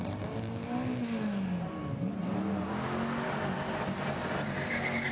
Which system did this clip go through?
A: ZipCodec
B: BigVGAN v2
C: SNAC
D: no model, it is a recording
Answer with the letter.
D